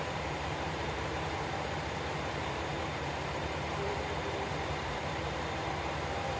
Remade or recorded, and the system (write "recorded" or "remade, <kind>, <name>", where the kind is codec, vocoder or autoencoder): remade, vocoder, BigVGAN v2